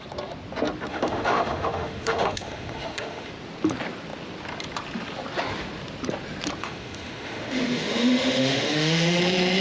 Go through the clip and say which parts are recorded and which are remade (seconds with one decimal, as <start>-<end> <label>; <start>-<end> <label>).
0.0-0.9 recorded; 0.9-3.3 remade; 3.3-6.6 recorded; 6.6-9.2 remade; 9.2-9.6 recorded